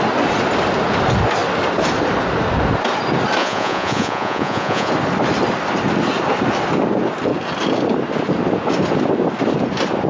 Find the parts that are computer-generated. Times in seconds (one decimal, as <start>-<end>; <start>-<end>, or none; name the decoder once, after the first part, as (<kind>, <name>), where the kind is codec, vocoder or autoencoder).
3.4-4.9 (vocoder, Vocos)